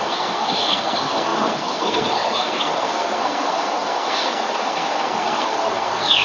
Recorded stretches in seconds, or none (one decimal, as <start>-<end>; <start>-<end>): none